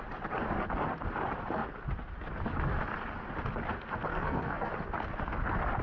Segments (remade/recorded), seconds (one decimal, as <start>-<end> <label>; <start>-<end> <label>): 0.0-4.1 recorded; 4.1-4.7 remade; 4.7-5.8 recorded